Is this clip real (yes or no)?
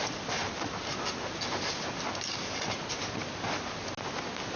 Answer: yes